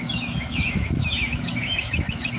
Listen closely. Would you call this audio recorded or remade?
remade